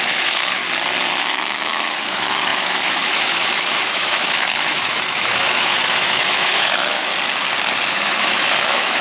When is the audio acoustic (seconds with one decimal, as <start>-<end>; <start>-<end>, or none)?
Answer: 0.6-1.1; 7.1-7.9